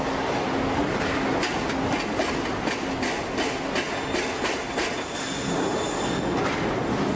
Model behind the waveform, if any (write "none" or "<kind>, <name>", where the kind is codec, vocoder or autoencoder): none